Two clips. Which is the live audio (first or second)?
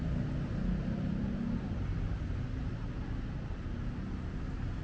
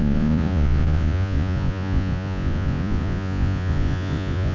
first